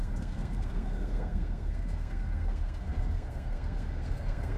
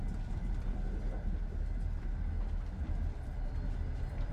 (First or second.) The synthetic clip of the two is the first